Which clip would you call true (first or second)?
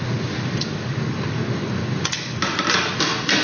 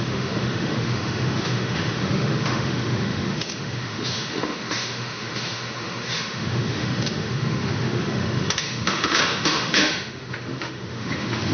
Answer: first